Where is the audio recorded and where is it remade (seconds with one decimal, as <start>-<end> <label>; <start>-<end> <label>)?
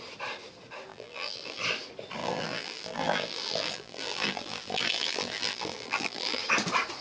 0.0-0.9 recorded; 0.9-1.6 remade; 1.6-2.2 recorded; 2.2-6.4 remade; 6.4-7.0 recorded